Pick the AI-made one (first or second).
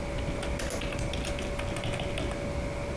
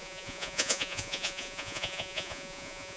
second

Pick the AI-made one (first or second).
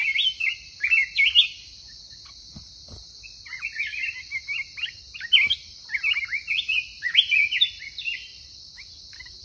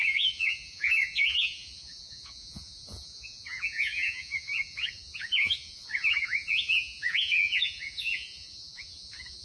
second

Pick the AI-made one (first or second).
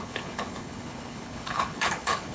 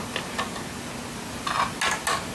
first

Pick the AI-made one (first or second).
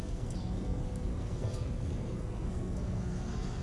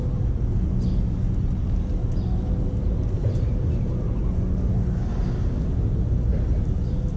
first